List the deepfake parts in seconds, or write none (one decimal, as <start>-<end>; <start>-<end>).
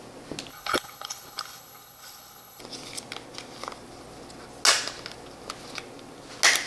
0.5-2.6